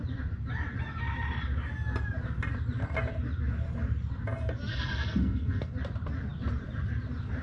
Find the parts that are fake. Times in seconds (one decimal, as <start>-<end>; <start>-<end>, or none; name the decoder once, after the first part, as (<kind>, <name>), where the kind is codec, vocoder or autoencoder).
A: 4.7-5.7 (codec, SNAC)